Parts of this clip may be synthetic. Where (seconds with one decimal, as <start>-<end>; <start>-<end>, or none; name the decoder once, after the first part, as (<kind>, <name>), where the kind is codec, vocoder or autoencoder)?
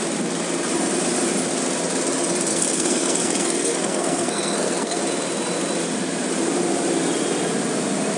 2.5-5.0 (codec, SNAC)